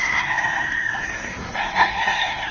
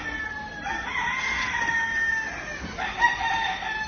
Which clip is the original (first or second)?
second